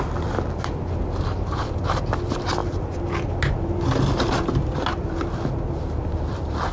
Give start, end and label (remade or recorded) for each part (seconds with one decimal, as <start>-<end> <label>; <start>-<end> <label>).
0.0-6.7 recorded